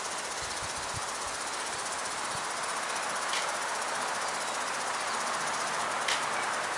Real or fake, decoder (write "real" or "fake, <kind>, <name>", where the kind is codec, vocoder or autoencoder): real